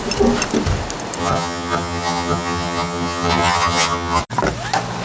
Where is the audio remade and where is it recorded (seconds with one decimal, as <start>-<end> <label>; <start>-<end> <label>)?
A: 0.0-1.2 recorded; 1.2-4.2 remade; 4.2-5.0 recorded

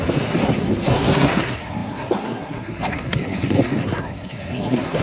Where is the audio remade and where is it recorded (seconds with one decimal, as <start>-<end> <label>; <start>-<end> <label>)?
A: 0.0-5.0 remade

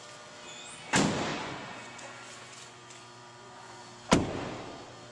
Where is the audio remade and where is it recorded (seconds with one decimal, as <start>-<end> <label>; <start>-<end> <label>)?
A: 0.0-1.3 recorded; 1.3-3.8 remade; 3.8-5.1 recorded

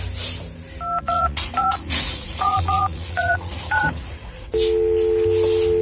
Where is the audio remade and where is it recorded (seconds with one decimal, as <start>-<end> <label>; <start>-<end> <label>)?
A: 0.0-1.0 recorded; 1.0-4.5 remade; 4.5-5.8 recorded